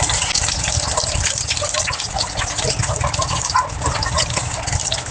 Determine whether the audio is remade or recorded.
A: recorded